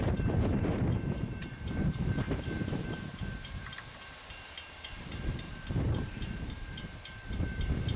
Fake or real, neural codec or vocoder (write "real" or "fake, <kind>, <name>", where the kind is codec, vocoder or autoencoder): fake, vocoder, BigVGAN v2